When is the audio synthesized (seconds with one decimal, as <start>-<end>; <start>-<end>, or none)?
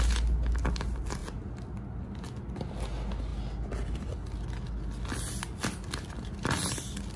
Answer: none